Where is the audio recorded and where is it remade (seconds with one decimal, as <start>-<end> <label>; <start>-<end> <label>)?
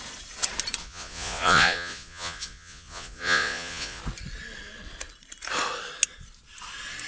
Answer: 0.0-0.8 recorded; 0.8-4.0 remade; 4.0-7.1 recorded